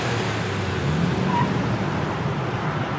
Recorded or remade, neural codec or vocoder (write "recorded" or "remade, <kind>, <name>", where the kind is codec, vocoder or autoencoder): recorded